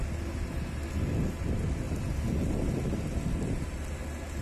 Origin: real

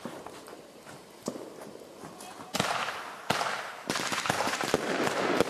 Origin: real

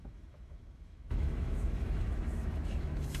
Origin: fake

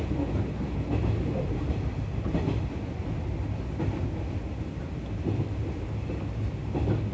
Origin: real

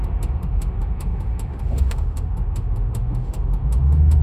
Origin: fake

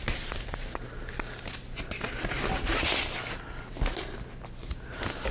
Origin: real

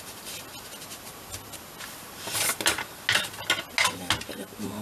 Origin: real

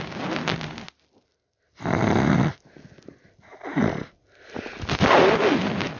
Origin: real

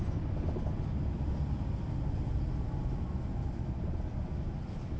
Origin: real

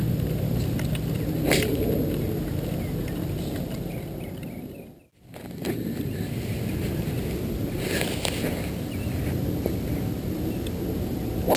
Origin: real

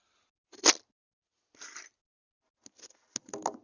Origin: real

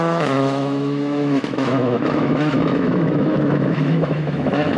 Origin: fake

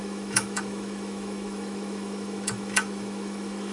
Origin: fake